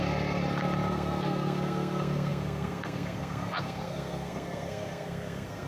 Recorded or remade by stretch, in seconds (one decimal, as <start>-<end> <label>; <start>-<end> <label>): 0.0-0.4 remade; 0.4-0.9 recorded; 0.9-5.7 remade